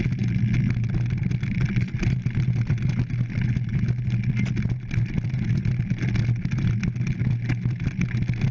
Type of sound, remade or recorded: recorded